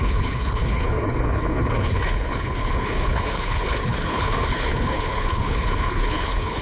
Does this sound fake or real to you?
fake